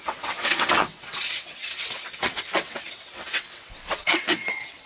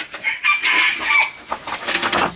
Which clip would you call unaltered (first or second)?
second